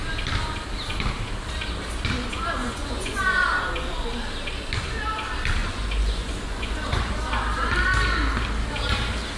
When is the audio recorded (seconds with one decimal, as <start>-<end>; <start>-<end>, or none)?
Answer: 0.0-2.6; 3.2-5.6; 7.1-9.4